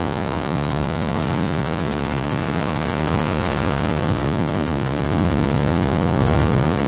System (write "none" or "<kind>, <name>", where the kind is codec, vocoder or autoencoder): vocoder, Vocos